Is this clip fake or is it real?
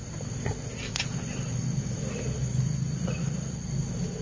real